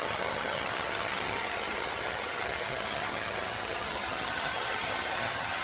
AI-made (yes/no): yes